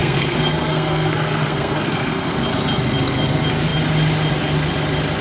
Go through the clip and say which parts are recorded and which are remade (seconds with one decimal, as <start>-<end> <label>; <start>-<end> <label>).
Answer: 0.0-2.4 remade; 2.4-5.2 recorded